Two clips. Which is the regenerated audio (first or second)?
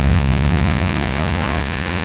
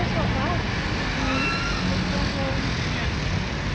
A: first